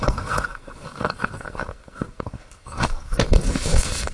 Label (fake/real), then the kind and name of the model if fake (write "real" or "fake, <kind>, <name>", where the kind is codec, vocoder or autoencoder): fake, codec, SNAC